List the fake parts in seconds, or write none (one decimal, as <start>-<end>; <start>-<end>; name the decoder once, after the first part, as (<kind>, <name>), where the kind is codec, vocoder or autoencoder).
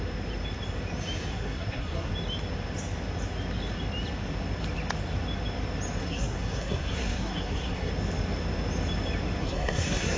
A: 1.3-2.1 (codec, SNAC); 6.0-7.9; 9.4-10.2